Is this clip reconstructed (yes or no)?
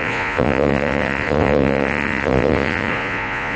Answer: yes